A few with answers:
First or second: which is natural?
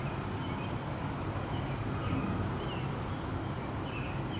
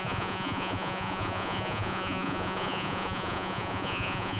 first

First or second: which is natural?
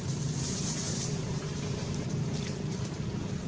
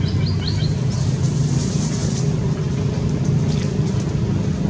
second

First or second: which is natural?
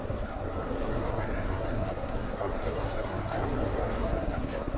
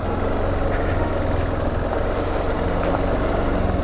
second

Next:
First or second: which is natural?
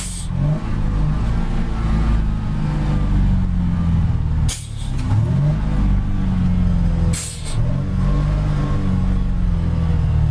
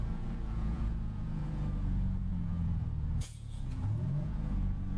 first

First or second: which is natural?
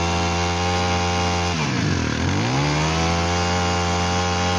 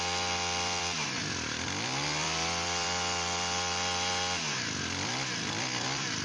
first